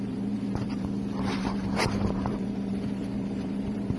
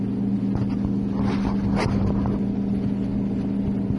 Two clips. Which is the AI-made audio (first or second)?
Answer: first